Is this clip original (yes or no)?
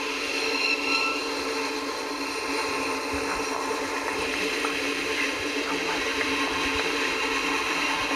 yes